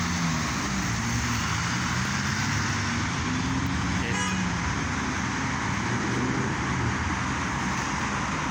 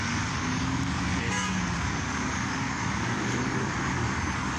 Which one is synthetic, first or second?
second